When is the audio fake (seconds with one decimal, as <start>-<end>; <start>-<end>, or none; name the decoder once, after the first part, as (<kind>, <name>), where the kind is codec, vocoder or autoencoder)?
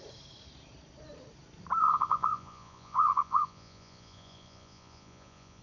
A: 1.8-5.6 (vocoder, Vocos)